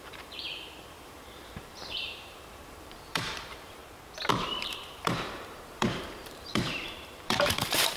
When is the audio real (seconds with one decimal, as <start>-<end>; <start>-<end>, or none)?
3.8-4.3